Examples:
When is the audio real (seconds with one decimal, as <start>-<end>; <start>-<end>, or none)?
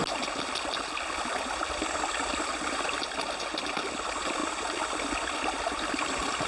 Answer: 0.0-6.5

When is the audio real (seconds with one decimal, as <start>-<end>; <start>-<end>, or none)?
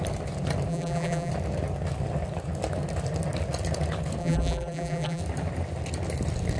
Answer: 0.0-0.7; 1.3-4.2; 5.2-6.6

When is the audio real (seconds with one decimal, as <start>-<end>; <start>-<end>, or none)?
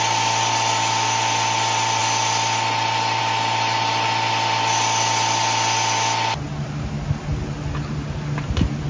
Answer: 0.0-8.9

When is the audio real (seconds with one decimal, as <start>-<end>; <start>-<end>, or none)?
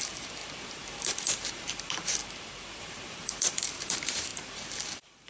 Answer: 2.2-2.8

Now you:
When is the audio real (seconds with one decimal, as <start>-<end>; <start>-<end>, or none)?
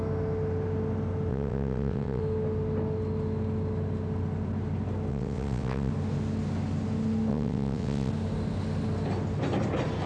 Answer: 0.0-1.3; 2.2-5.1; 5.9-7.3; 8.1-10.1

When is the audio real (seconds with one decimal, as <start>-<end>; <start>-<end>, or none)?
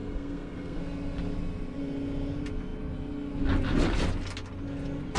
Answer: 0.8-5.2